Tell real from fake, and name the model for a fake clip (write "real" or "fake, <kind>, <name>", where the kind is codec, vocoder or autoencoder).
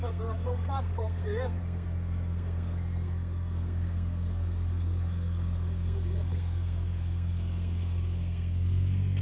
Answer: fake, codec, SNAC